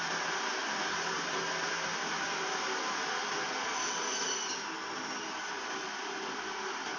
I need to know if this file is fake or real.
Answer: real